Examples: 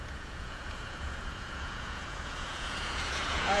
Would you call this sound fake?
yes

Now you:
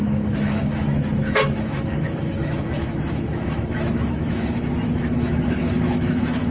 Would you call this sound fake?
yes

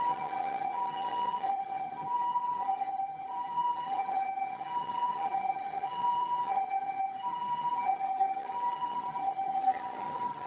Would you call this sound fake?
yes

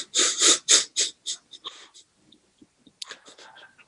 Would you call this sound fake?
no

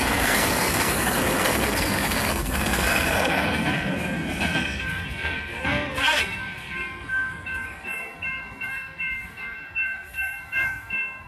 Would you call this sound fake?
yes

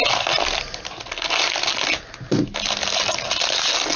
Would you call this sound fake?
no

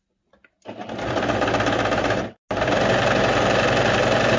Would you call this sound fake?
no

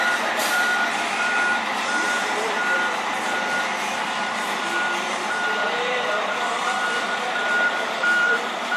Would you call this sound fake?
yes